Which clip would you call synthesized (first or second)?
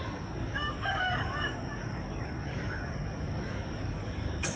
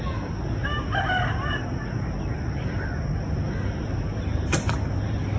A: first